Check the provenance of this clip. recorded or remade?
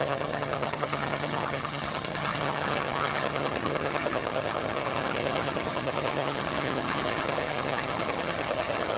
remade